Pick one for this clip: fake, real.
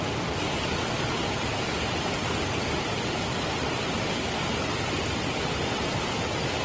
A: real